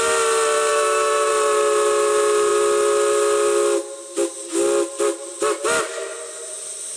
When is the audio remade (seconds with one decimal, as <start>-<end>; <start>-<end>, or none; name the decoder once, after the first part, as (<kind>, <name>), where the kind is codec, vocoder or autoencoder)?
0.7-1.3 (autoencoder, DAC-VAE)